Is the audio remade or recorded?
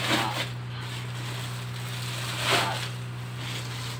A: recorded